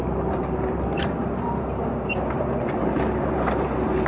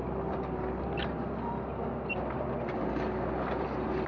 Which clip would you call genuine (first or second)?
second